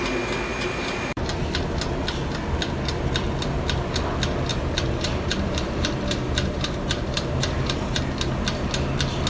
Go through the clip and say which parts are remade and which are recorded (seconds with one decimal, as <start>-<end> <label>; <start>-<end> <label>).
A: 0.0-0.5 recorded; 0.5-1.4 remade; 1.4-4.5 recorded; 4.5-8.0 remade; 8.0-9.3 recorded